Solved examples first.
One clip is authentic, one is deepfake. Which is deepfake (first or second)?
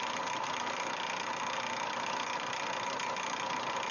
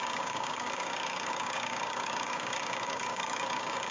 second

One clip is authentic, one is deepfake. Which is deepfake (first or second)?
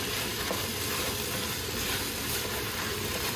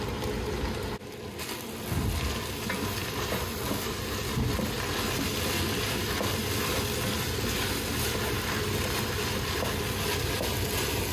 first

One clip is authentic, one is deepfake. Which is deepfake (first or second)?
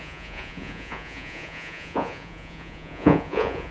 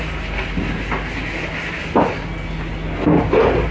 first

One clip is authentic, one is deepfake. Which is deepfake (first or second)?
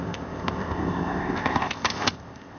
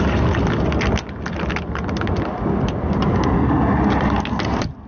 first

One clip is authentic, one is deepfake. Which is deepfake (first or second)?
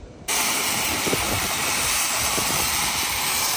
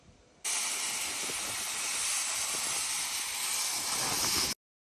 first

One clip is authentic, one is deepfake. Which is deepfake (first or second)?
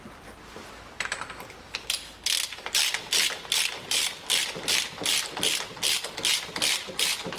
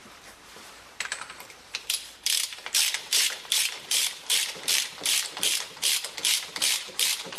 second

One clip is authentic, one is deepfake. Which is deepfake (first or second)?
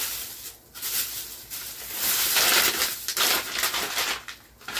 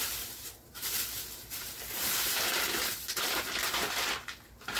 second